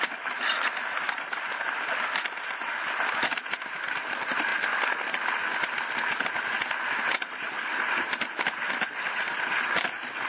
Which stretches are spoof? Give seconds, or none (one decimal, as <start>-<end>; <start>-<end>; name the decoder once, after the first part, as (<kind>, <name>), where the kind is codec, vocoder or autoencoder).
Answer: none